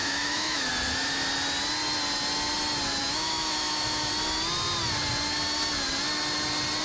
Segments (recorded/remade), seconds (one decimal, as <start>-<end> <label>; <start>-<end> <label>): 0.0-0.7 remade; 0.7-3.0 recorded; 3.0-4.1 remade; 4.1-6.8 recorded